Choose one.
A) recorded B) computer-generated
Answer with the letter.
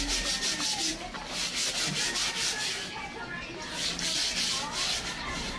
A